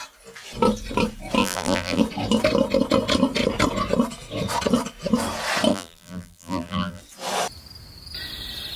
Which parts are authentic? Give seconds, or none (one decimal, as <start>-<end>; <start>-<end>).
0.0-1.4; 2.0-5.7; 7.0-8.8